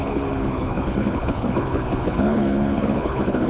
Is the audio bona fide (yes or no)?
no